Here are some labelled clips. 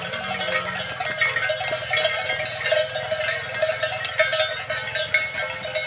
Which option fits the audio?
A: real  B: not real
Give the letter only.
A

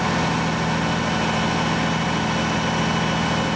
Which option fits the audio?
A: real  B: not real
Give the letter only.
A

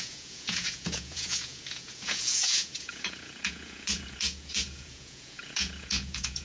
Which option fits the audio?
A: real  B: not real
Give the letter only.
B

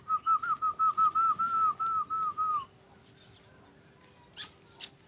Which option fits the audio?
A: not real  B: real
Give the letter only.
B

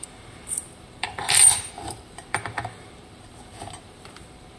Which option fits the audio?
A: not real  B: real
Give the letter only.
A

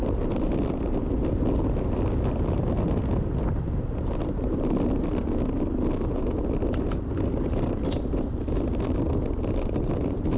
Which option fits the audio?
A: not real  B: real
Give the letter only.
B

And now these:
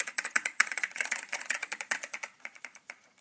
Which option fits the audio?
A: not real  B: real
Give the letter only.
A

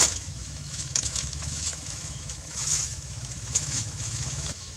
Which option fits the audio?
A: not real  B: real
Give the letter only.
A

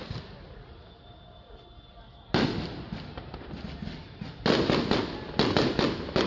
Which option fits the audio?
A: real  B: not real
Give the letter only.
A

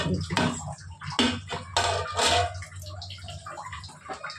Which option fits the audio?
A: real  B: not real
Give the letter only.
A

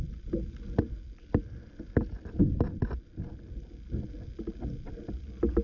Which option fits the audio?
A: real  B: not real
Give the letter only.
A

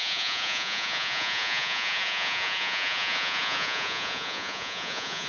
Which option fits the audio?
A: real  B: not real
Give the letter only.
B